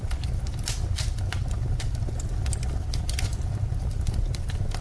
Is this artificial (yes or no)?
no